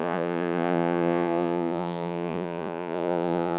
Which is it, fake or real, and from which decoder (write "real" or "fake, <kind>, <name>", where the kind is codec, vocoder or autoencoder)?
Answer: fake, vocoder, Vocos